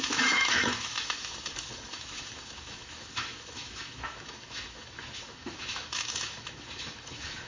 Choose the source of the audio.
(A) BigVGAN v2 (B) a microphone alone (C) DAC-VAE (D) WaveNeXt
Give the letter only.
C